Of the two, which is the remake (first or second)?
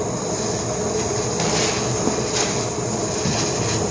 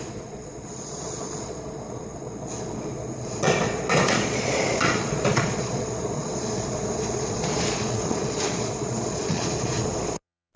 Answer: second